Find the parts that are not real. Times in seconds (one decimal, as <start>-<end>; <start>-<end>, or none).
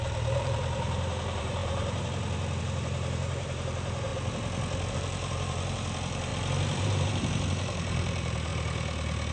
0.0-4.1; 4.9-6.3; 6.8-8.5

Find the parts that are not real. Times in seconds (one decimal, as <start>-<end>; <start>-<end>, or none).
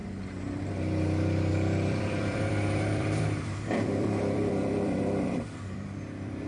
1.5-6.5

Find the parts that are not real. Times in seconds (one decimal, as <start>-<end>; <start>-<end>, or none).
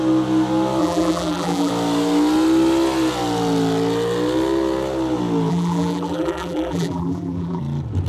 0.8-1.7; 5.5-7.6